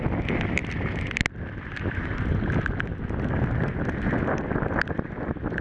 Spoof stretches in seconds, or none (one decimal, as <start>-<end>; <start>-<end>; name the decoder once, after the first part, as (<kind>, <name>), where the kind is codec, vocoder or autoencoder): none